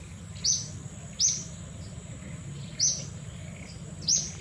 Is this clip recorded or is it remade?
recorded